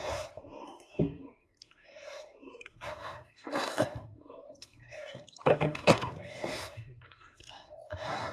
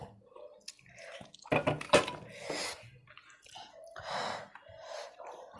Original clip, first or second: second